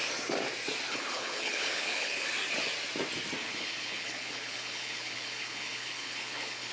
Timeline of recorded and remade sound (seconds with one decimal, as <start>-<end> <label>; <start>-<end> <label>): 0.0-0.9 recorded; 0.9-2.3 remade; 2.3-3.4 recorded; 3.4-6.7 remade